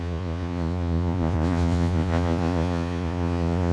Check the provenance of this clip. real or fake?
fake